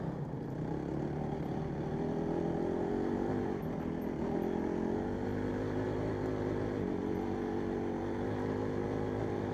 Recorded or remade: recorded